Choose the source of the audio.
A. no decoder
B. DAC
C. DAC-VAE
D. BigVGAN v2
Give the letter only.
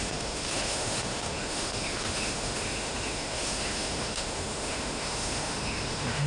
C